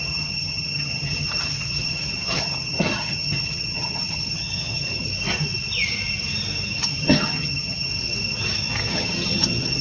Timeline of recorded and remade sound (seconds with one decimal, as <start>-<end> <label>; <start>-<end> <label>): 0.0-5.1 remade; 5.1-6.8 recorded; 6.8-7.9 remade; 7.9-8.9 recorded; 8.9-9.8 remade

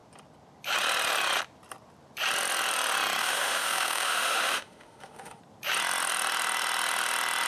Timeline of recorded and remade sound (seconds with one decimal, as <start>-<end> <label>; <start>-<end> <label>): 0.0-3.2 recorded; 3.2-5.4 remade; 5.4-7.5 recorded